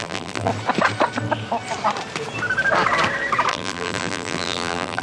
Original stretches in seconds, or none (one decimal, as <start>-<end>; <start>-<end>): 0.5-3.5